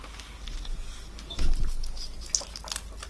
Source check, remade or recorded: recorded